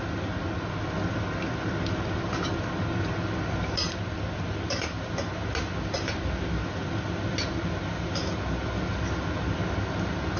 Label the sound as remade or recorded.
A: recorded